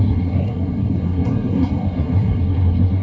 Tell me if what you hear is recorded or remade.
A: remade